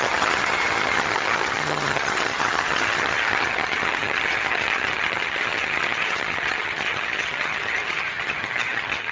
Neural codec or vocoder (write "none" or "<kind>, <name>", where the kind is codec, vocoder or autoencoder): vocoder, HiFi-GAN